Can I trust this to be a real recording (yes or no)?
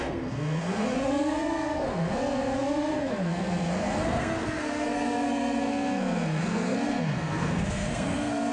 no